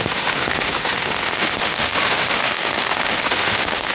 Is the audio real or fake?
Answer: fake